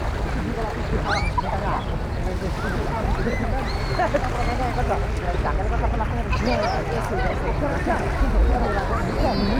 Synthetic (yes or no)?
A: no